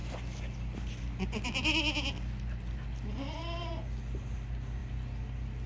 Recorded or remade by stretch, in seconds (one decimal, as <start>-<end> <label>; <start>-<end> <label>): 0.0-3.4 remade; 3.4-4.8 recorded; 4.8-5.7 remade